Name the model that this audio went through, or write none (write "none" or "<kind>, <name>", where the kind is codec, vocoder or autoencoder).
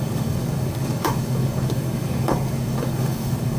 codec, DAC